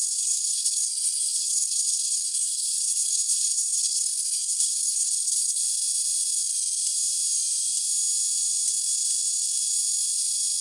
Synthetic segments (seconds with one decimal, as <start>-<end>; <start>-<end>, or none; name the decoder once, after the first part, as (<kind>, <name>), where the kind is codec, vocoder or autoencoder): 0.0-5.6 (codec, HILCodec)